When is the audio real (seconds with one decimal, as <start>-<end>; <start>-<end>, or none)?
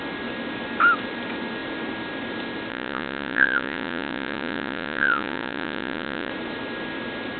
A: 0.0-2.7; 6.3-7.4